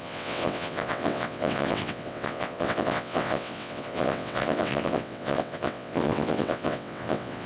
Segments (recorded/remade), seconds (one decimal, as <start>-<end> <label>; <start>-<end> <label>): 0.0-7.5 remade